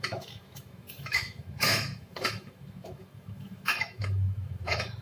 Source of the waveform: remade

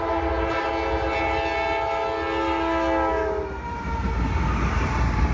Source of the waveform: recorded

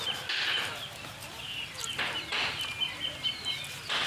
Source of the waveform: recorded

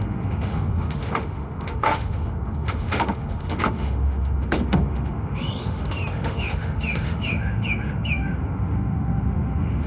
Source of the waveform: remade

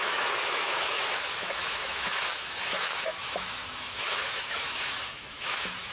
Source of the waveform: remade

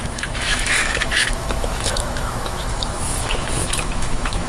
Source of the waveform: remade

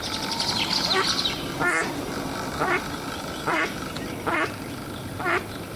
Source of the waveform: recorded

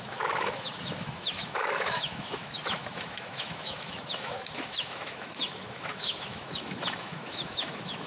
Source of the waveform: remade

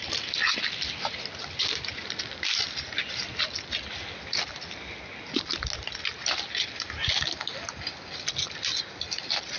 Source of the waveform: recorded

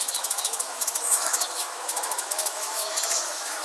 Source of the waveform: remade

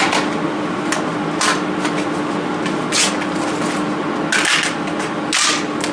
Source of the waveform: recorded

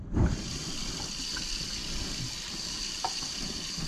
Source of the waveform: recorded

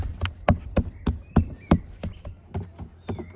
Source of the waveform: recorded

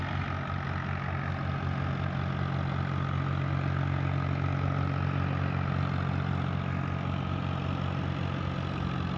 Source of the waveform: recorded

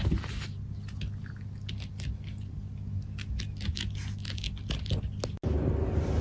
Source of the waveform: recorded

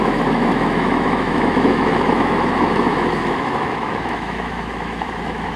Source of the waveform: remade